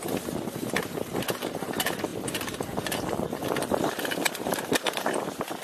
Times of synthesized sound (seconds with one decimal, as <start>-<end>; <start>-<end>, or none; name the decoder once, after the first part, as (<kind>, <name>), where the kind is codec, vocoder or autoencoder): 2.1-4.3 (vocoder, BigVGAN v2)